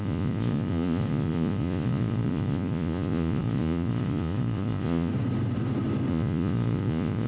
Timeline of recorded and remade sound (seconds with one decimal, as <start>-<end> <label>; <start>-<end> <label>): 0.0-5.1 remade; 5.1-6.1 recorded; 6.1-7.3 remade